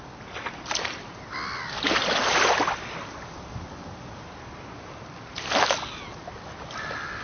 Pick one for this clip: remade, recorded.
recorded